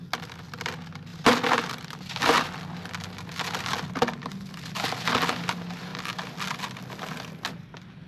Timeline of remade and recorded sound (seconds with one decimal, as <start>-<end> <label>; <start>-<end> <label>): 0.0-1.1 recorded; 1.1-2.1 remade; 2.1-8.1 recorded